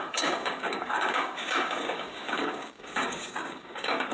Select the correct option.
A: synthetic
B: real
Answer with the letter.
A